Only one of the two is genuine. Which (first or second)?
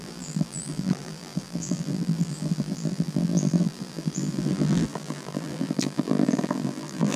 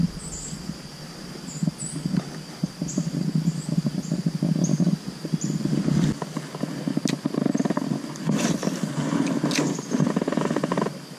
second